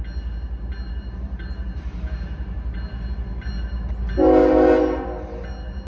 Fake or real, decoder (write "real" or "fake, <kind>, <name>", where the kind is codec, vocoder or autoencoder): real